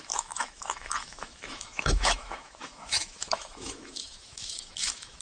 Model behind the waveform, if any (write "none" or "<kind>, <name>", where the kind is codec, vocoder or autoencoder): autoencoder, DAC-VAE